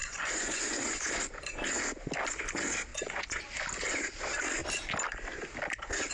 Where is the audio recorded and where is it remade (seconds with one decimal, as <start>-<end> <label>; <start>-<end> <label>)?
0.0-1.0 remade; 1.0-2.9 recorded; 2.9-3.4 remade; 3.4-6.1 recorded